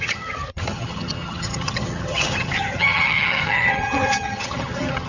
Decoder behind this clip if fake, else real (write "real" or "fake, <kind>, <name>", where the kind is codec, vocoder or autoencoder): fake, vocoder, HiFi-GAN